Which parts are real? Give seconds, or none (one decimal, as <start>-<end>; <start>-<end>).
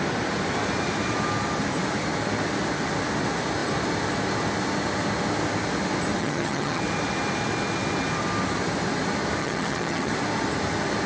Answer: 0.0-6.2; 6.8-9.4; 10.1-11.1